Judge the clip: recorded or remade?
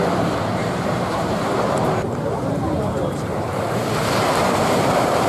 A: remade